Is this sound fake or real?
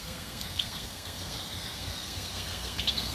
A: fake